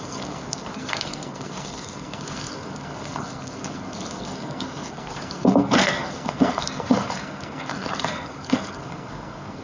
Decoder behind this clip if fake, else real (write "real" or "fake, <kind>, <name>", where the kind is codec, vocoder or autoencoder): fake, codec, SNAC